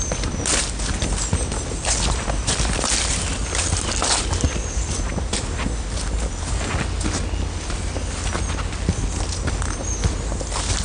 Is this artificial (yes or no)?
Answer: no